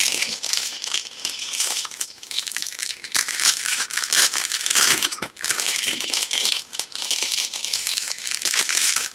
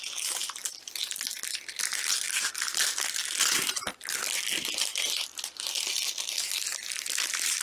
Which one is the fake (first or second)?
first